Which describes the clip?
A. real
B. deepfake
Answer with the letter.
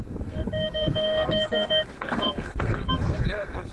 B